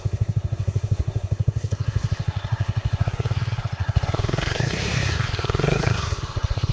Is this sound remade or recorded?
remade